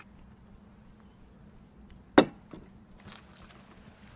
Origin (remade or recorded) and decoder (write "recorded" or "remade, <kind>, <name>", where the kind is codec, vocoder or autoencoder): recorded